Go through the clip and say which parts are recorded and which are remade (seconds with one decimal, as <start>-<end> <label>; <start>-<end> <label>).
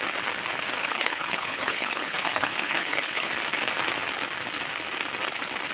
0.0-0.8 recorded; 0.8-3.3 remade; 3.3-5.7 recorded